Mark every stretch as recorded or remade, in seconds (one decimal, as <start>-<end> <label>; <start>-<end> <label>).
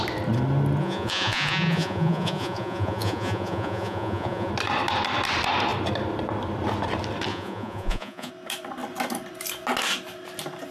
0.0-0.8 recorded; 0.8-4.5 remade; 4.5-7.3 recorded; 7.3-8.3 remade; 8.3-10.7 recorded